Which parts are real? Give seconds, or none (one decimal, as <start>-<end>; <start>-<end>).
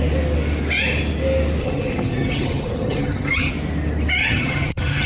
0.0-1.6; 3.5-4.2